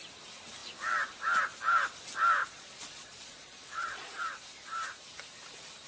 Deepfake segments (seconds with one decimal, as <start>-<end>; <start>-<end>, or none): 2.4-4.2